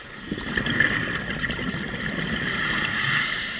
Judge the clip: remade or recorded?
recorded